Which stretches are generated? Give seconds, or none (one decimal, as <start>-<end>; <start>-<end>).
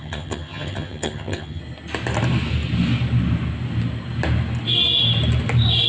0.0-1.6